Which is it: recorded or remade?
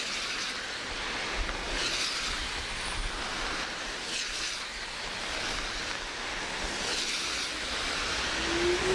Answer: recorded